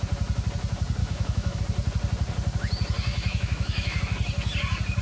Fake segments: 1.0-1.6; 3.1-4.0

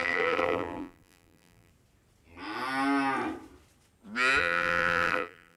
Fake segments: 0.0-1.7; 4.4-5.6

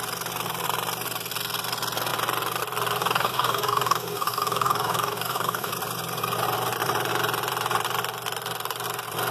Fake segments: 3.0-5.7

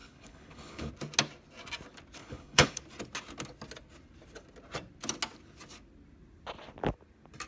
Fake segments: 0.0-0.9; 2.2-2.8

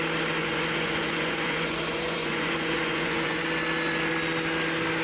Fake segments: 0.4-3.4

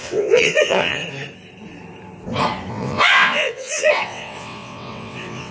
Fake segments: 0.0-1.0; 2.7-5.5